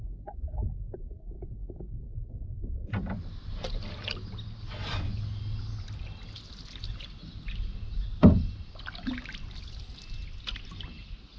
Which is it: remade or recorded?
recorded